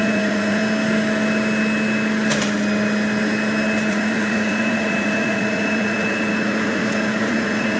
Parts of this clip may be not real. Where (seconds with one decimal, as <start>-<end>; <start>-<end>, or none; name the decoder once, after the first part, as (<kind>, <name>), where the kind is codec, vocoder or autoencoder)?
0.0-0.6 (vocoder, Vocos); 3.9-7.8